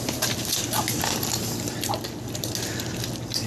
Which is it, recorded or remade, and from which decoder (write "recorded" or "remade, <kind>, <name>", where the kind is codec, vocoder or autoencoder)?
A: recorded